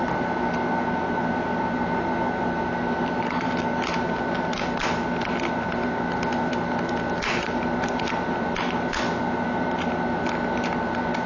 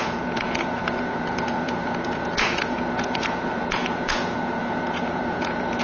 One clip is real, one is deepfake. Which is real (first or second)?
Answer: first